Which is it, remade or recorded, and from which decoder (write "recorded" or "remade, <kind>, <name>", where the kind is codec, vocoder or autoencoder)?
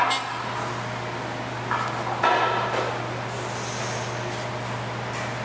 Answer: recorded